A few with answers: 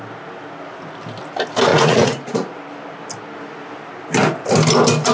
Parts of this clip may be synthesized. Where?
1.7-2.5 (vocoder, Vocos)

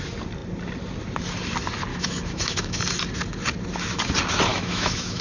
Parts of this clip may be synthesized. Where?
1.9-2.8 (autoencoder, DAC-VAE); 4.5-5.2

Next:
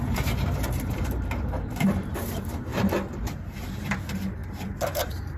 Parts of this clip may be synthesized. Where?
0.0-2.7 (vocoder, BigVGAN v2); 3.7-5.4